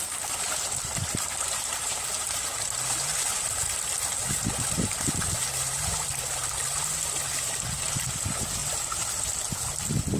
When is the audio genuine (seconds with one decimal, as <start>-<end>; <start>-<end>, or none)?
0.0-10.2